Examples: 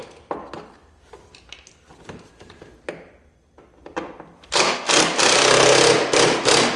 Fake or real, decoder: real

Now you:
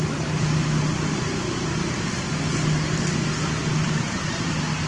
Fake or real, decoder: real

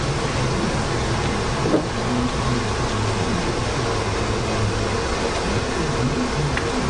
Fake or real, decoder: real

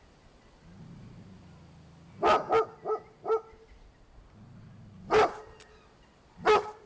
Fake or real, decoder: real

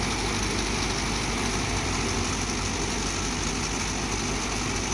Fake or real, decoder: real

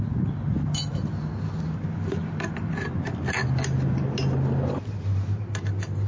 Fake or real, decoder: real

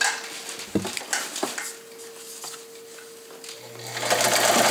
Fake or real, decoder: real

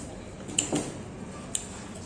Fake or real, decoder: real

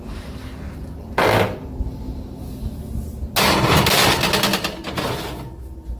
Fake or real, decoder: real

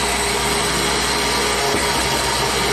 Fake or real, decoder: real